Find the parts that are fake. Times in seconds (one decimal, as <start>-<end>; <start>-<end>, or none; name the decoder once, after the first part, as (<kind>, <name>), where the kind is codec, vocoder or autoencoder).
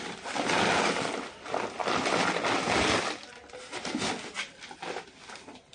none